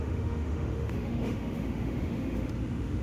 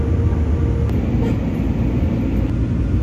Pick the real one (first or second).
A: second